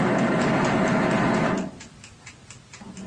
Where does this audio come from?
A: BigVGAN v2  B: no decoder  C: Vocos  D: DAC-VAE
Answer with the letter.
B